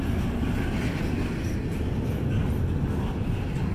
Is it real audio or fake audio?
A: real